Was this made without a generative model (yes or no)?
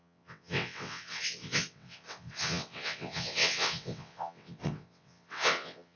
no